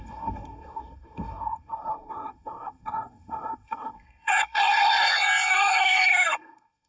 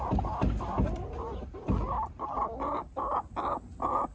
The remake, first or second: first